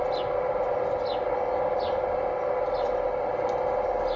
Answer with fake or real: real